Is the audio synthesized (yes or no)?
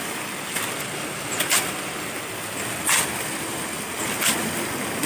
no